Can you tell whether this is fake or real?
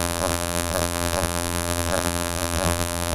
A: fake